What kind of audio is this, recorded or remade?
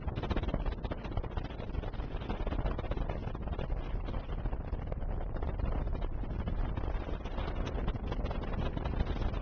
recorded